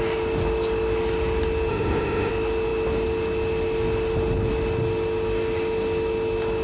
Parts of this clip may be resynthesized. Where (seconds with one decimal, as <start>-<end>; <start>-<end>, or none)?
1.7-2.3